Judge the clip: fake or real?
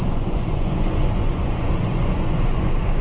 fake